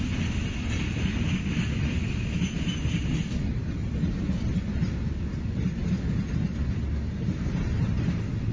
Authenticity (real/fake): real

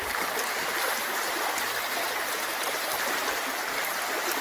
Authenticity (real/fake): real